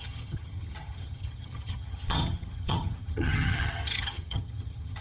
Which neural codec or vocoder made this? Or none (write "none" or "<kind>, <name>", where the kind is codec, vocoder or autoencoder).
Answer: vocoder, HiFi-GAN